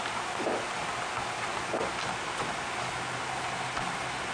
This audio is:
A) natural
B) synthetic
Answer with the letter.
A